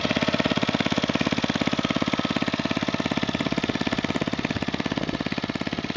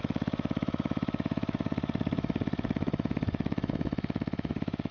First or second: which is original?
first